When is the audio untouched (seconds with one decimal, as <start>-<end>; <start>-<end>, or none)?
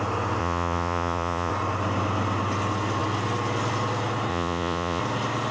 0.0-0.4; 1.5-4.3; 5.0-5.5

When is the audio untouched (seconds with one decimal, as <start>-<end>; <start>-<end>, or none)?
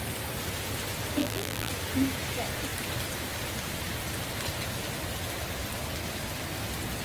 0.0-1.2; 1.7-7.0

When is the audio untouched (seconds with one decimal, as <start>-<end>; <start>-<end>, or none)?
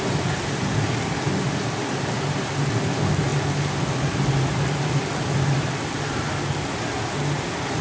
0.0-7.8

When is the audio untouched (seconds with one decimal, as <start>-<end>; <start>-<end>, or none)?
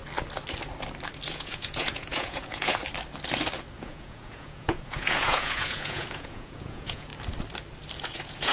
0.0-1.3; 2.8-3.8; 7.1-8.0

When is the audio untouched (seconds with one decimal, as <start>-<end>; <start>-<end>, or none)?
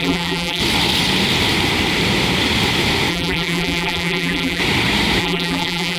0.6-3.1; 4.6-5.2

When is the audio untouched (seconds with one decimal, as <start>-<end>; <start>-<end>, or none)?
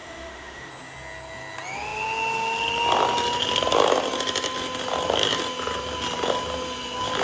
0.7-7.2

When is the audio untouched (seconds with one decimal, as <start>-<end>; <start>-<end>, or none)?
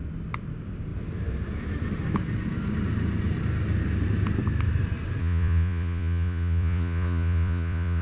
0.0-5.2